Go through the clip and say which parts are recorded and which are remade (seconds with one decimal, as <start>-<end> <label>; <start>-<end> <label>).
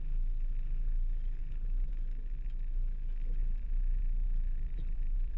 0.0-1.4 recorded; 1.4-1.9 remade; 1.9-3.4 recorded; 3.4-5.4 remade